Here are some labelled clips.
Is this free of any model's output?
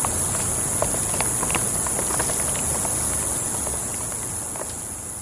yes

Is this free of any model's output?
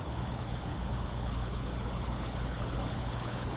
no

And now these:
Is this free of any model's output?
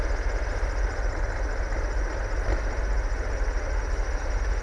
yes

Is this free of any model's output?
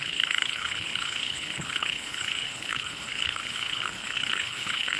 no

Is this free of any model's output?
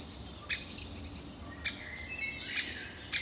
yes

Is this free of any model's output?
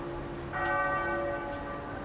yes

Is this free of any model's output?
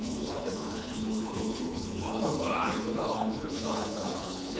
no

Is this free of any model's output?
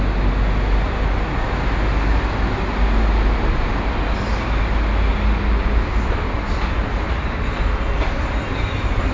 yes